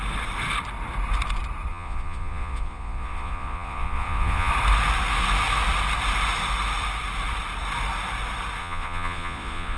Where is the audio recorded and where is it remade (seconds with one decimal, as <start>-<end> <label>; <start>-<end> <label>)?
0.0-1.7 recorded; 1.7-4.5 remade; 4.5-8.6 recorded; 8.6-9.8 remade